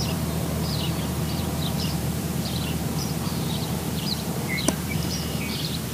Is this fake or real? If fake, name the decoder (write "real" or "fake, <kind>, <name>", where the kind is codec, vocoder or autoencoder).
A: fake, vocoder, BigVGAN v2